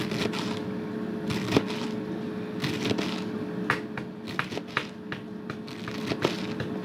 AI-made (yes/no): no